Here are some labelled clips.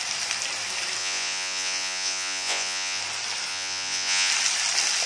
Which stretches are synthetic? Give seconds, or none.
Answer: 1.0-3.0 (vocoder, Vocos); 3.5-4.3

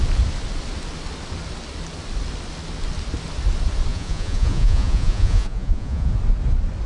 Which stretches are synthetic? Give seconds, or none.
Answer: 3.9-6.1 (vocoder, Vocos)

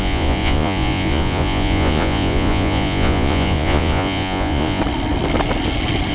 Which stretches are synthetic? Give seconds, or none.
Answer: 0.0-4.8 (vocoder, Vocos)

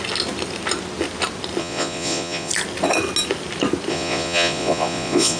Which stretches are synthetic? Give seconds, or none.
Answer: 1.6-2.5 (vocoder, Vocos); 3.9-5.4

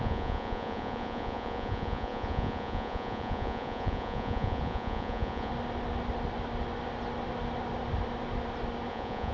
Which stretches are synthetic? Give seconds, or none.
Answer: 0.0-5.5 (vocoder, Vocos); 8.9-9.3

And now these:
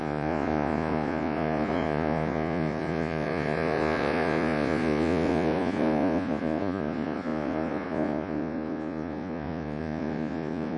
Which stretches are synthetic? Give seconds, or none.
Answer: 0.0-10.8 (vocoder, Vocos)